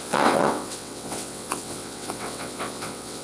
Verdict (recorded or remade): remade